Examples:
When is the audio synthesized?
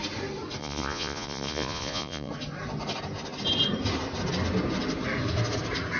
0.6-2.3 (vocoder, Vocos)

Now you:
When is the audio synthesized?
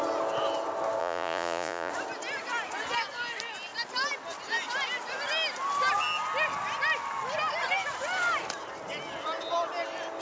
1.0-1.9 (vocoder, Vocos)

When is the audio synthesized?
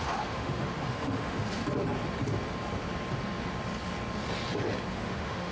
0.0-1.6 (autoencoder, DAC-VAE); 4.9-5.5